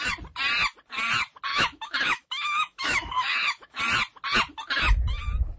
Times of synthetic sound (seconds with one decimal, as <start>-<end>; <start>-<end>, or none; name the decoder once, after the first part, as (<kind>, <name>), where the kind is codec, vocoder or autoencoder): 1.5-3.8 (autoencoder, DAC-VAE)